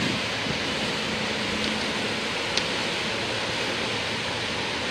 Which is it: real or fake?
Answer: real